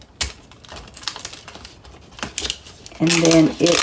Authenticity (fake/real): real